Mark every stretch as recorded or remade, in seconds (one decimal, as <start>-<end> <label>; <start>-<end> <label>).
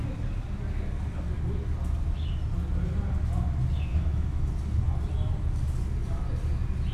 0.0-3.9 recorded; 3.9-4.5 remade; 4.5-6.9 recorded